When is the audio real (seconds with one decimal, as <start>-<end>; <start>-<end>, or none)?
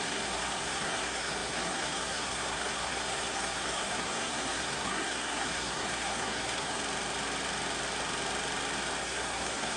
6.8-9.0